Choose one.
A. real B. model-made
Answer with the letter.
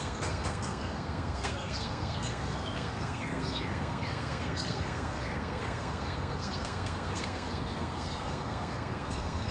B